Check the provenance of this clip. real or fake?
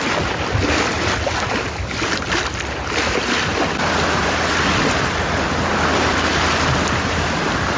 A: real